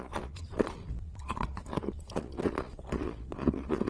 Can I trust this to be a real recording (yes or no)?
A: no